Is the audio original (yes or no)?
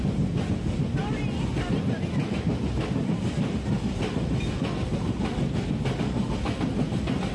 yes